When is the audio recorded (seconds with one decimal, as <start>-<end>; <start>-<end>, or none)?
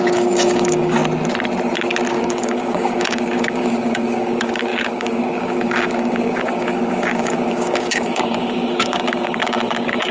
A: 1.0-2.1